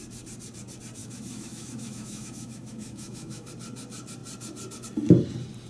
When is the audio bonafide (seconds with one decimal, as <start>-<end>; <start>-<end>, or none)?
0.0-1.0; 3.5-5.7